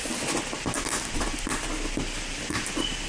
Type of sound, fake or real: real